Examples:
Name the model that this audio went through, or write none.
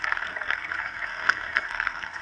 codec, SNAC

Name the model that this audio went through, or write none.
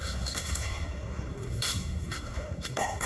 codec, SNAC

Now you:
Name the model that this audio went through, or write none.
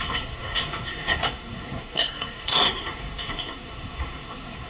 codec, SNAC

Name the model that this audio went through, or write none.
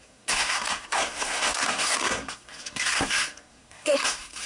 codec, SNAC